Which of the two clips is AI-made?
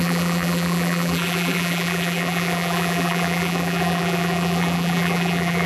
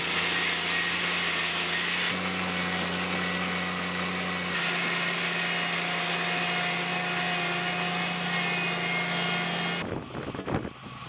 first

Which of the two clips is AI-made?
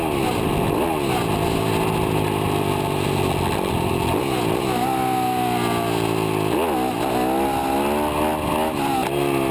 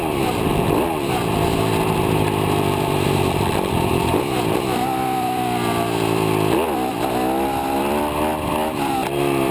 second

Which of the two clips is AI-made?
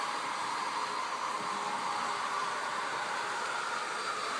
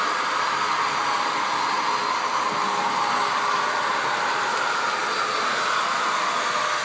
first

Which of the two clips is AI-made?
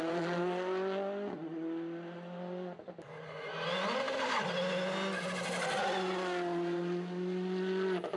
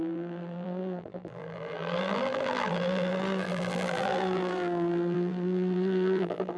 second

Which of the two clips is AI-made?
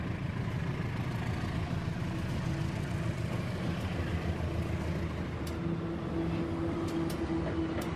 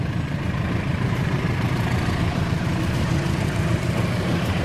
second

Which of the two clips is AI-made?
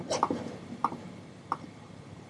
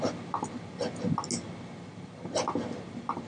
first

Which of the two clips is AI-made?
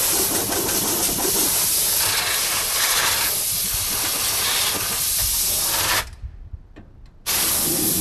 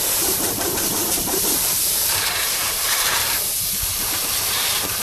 second